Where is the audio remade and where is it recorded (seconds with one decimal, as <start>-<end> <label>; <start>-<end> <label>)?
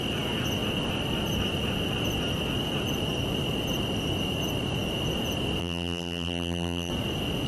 0.0-5.6 recorded; 5.6-6.9 remade; 6.9-7.5 recorded